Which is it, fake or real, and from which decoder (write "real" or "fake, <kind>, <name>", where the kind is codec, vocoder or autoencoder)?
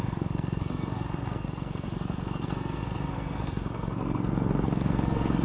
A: fake, codec, SNAC